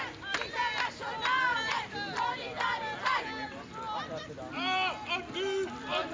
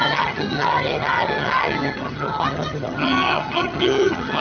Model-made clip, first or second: second